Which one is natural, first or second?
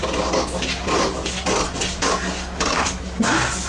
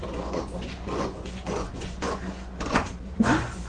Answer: first